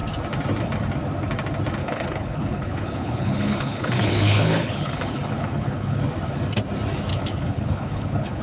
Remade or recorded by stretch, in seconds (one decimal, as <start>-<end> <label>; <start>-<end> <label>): 0.0-1.8 recorded; 1.8-6.0 remade; 6.0-7.1 recorded; 7.1-8.4 remade